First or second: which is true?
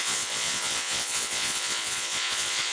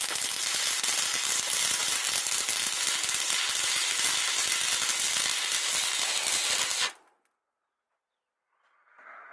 second